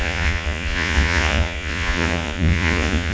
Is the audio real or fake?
fake